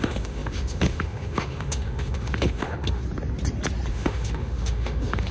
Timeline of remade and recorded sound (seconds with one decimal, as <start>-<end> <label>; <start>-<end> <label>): 0.0-3.0 remade; 3.0-3.9 recorded; 3.9-5.3 remade

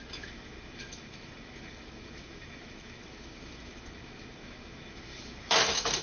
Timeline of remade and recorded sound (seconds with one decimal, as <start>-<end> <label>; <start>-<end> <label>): 0.0-6.0 remade

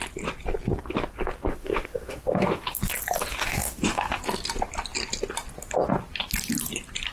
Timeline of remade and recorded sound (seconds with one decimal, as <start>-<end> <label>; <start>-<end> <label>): 0.0-1.5 recorded; 1.5-2.9 remade; 2.9-3.3 recorded; 3.3-4.2 remade; 4.2-7.1 recorded

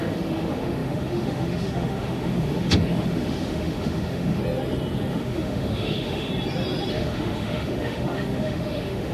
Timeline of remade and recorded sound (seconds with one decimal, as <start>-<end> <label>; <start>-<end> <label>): 0.0-4.4 remade; 4.4-5.1 recorded; 5.1-6.3 remade; 6.3-6.9 recorded; 6.9-9.1 remade

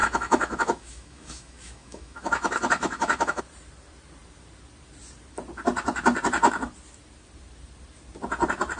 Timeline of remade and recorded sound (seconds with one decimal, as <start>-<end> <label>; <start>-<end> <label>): 0.0-3.4 remade; 3.4-8.8 recorded

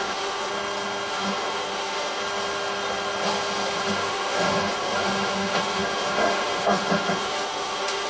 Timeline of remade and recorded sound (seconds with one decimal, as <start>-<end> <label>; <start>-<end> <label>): 0.0-0.5 remade; 0.5-1.1 recorded; 1.1-2.2 remade; 2.2-3.8 recorded; 3.8-8.1 remade